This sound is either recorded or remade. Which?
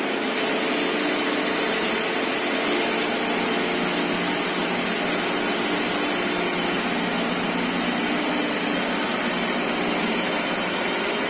recorded